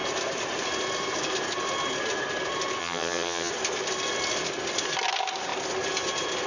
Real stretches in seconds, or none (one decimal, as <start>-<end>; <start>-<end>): 0.0-2.8; 3.5-6.5